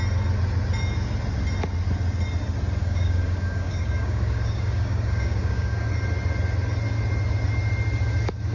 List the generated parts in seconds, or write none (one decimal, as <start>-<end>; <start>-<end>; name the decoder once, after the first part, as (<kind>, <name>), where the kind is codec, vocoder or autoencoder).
2.8-5.8 (codec, DAC)